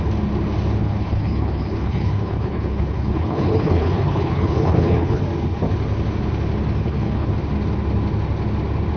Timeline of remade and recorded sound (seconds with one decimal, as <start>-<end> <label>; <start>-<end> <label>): 0.0-0.8 recorded; 0.8-5.2 remade; 5.2-6.8 recorded; 6.8-7.3 remade; 7.3-9.0 recorded